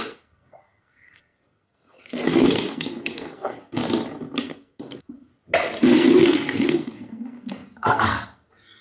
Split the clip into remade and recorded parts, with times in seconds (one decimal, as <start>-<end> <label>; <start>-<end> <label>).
0.0-3.8 remade; 3.8-4.4 recorded; 4.4-5.3 remade; 5.3-5.8 recorded; 5.8-8.8 remade

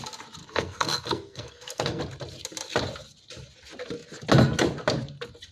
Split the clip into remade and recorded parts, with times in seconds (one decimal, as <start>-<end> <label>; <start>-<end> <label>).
0.0-0.4 recorded; 0.4-2.0 remade; 2.0-5.5 recorded

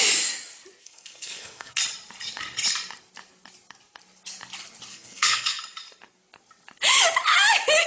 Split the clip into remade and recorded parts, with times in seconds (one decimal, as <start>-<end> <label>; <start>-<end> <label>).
0.0-0.8 recorded; 0.8-1.8 remade; 1.8-4.9 recorded; 4.9-5.6 remade; 5.6-7.9 recorded

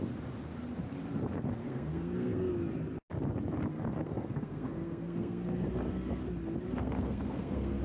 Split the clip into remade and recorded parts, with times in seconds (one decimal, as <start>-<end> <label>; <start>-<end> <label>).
0.0-1.6 recorded; 1.6-2.5 remade; 2.5-3.7 recorded; 3.7-5.7 remade; 5.7-6.8 recorded; 6.8-7.8 remade

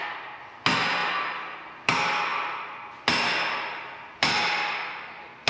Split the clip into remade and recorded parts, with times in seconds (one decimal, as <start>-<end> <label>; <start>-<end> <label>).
0.0-5.5 recorded

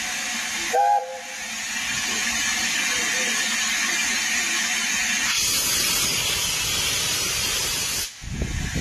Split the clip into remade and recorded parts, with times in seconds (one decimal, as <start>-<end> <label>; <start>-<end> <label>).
0.0-8.8 recorded

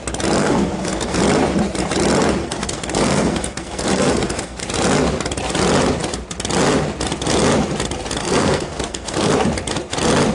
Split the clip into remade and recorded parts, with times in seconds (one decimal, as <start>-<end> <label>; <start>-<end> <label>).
0.0-0.4 recorded; 0.4-1.2 remade; 1.2-2.4 recorded; 2.4-4.6 remade; 4.6-8.2 recorded; 8.2-9.3 remade; 9.3-10.3 recorded